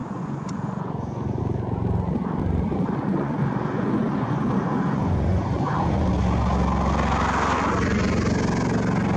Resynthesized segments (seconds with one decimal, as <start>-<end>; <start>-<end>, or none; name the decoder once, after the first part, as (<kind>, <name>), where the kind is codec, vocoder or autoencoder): 0.0-1.4 (vocoder, Vocos); 3.0-6.1